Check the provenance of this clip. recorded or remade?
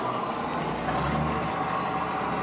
recorded